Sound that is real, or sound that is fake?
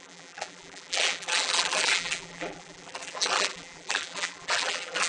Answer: fake